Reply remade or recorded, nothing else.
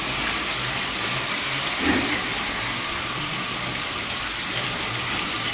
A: recorded